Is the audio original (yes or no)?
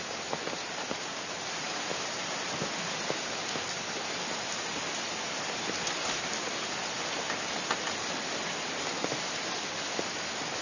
yes